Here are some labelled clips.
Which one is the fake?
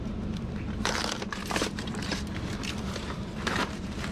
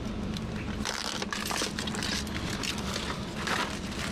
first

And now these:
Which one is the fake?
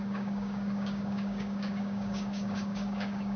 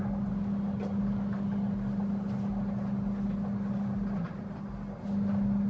first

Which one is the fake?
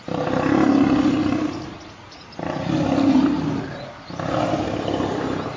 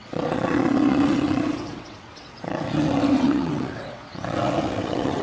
second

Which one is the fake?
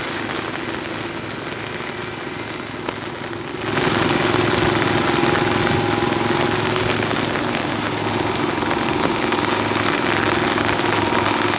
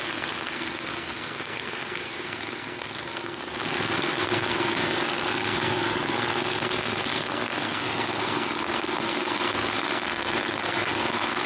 second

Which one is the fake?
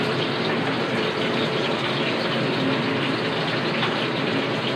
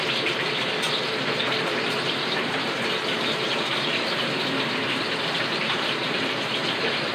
second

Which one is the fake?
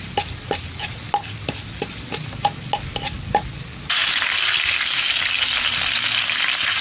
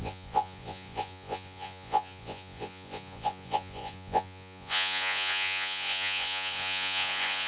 second